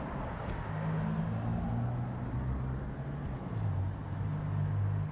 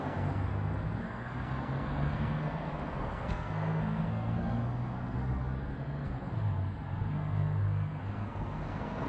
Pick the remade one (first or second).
second